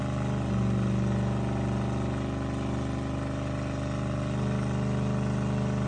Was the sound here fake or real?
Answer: real